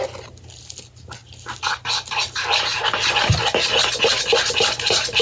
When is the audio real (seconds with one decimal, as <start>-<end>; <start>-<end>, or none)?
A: 0.0-5.2